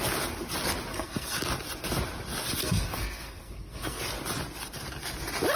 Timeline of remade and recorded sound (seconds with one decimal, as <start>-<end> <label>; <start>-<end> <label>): 0.0-0.9 recorded; 0.9-1.4 remade; 1.4-2.6 recorded; 2.6-4.0 remade; 4.0-5.6 recorded